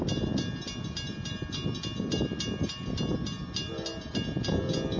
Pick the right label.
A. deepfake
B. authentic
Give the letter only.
B